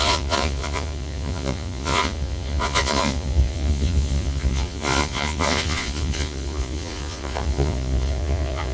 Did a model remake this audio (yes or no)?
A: yes